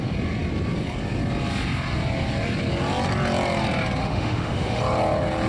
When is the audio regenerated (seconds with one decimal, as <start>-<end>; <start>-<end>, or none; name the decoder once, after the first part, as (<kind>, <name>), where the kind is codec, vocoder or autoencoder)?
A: 4.0-4.8 (autoencoder, DAC-VAE)